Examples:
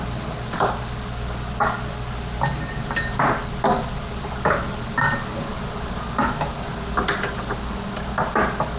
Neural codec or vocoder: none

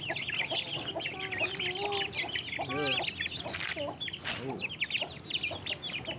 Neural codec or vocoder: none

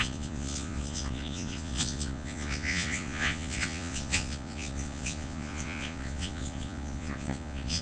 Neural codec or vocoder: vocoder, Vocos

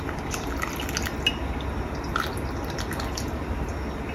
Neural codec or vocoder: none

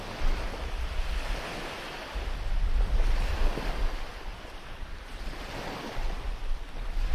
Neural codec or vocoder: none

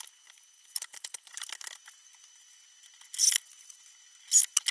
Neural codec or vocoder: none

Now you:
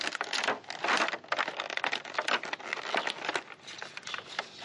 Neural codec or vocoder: none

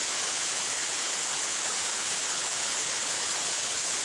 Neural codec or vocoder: codec, HILCodec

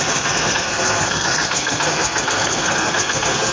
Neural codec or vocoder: codec, SNAC